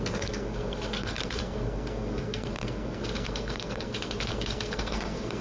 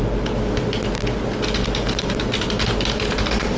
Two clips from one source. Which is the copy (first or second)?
first